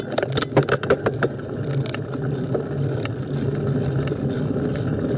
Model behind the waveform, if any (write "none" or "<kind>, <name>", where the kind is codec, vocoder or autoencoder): none